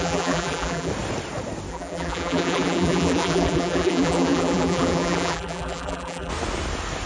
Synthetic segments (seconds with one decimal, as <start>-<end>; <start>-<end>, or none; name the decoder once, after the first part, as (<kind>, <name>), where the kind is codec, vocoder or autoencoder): 0.0-0.9 (vocoder, BigVGAN v2); 1.7-6.3